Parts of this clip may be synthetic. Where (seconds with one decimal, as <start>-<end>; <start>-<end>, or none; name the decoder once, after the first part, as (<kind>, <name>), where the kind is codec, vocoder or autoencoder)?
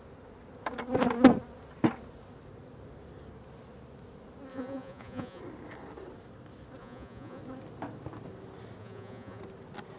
4.5-5.4 (vocoder, Vocos); 6.8-7.4; 8.8-9.4